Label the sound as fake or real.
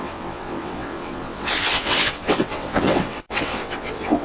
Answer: fake